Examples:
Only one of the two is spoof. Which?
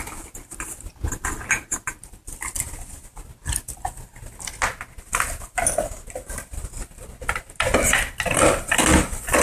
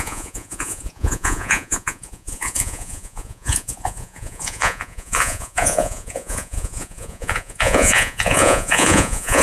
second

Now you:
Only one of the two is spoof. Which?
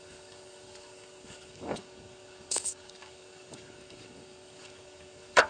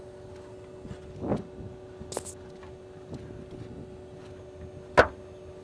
first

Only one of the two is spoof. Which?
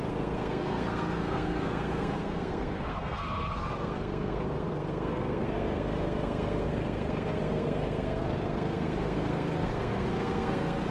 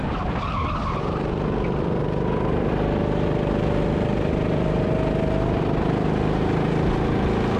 first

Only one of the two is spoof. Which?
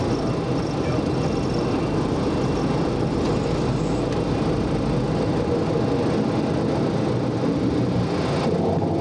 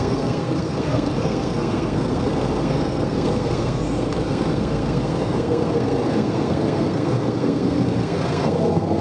second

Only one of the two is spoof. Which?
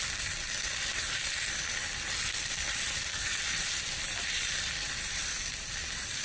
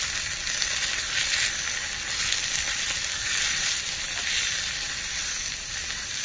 first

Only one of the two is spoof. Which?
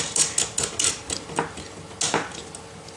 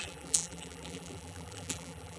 second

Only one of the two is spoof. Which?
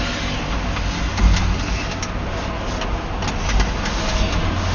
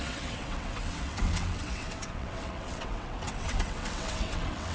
second